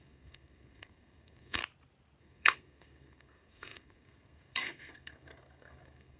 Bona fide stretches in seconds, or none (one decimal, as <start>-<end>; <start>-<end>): 1.6-2.2